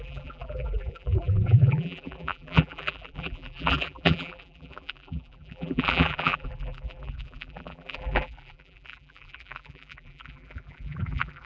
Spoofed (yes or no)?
yes